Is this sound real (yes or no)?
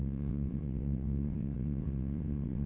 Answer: no